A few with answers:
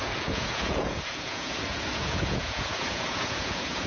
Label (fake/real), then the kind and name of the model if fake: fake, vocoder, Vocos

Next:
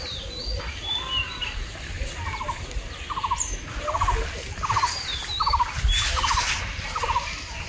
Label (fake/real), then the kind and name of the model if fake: real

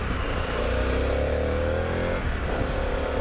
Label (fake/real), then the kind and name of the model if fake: real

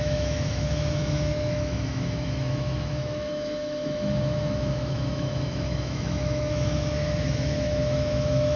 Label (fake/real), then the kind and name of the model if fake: fake, autoencoder, DAC-VAE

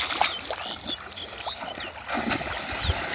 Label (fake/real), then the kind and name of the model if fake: real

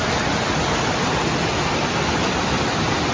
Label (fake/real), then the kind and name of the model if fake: real